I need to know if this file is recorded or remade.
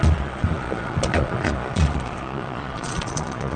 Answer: remade